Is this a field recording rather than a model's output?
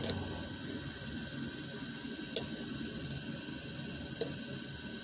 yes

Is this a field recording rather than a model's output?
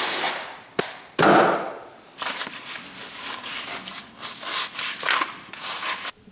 no